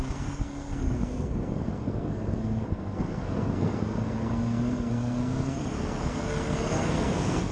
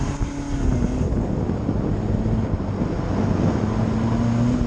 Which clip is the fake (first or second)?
first